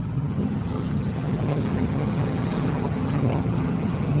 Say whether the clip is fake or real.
fake